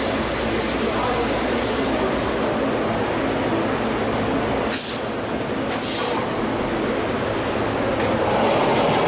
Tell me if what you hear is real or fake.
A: real